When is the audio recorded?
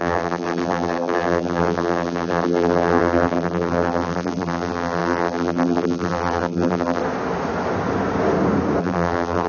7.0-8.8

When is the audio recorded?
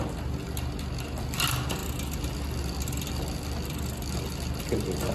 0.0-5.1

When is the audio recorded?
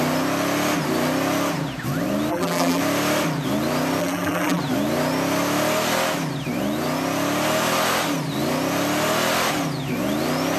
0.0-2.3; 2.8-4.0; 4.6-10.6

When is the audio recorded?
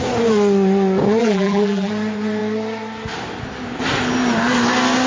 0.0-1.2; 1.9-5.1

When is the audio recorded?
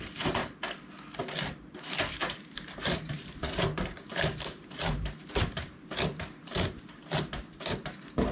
0.4-2.1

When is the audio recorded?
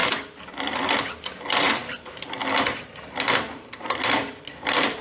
1.4-1.8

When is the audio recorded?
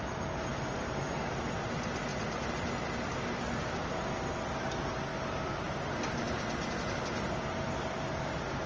0.0-0.5; 1.4-8.7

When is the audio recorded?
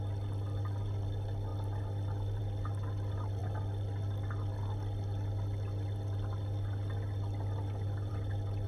0.0-8.7